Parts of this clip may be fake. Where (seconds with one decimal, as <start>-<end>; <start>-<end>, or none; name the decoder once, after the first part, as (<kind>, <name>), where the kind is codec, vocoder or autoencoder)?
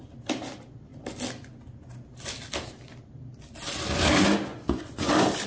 4.5-5.1 (vocoder, Vocos)